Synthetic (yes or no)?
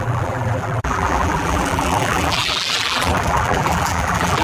yes